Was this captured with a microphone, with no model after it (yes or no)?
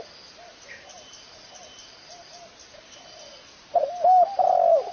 yes